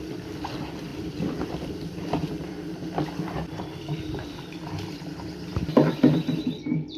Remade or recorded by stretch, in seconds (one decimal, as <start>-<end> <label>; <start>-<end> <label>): 0.0-0.9 recorded; 0.9-1.7 remade; 1.7-2.2 recorded; 2.2-6.4 remade; 6.4-7.0 recorded